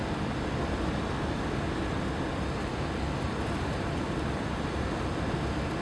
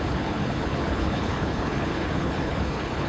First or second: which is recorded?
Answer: first